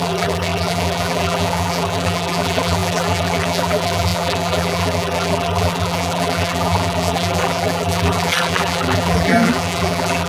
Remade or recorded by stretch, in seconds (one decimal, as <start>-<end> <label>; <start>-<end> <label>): 0.0-10.3 remade